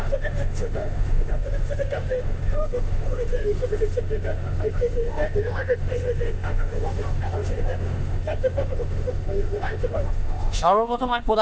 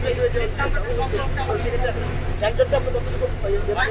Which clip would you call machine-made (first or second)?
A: first